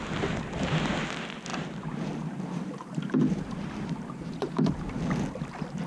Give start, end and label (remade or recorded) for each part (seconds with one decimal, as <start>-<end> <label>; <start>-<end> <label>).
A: 0.0-1.5 recorded; 1.5-5.0 remade; 5.0-5.9 recorded